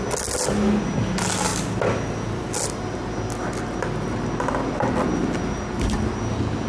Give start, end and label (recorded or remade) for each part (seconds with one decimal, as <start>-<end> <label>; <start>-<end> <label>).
0.0-6.7 recorded